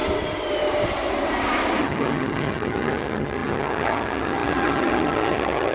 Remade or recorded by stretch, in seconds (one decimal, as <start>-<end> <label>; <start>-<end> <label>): 0.0-1.8 recorded; 1.8-5.7 remade